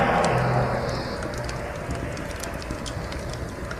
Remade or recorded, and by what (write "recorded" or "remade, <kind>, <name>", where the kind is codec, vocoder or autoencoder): recorded